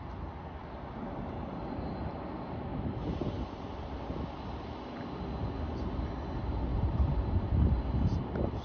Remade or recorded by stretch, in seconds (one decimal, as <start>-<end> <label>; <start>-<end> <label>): 0.0-0.6 recorded; 0.6-1.9 remade; 1.9-2.7 recorded; 2.7-4.0 remade; 4.0-6.7 recorded; 6.7-8.2 remade; 8.2-8.6 recorded